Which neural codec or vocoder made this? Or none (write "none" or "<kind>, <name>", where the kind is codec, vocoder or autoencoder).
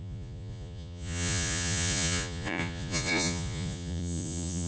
vocoder, Vocos